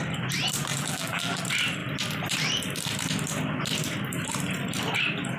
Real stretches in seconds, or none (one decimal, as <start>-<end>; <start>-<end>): 0.0-0.7; 1.4-5.4